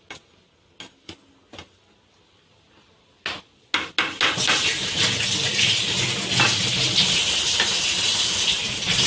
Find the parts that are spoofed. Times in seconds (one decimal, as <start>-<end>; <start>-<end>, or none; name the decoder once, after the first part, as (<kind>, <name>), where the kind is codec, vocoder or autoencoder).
none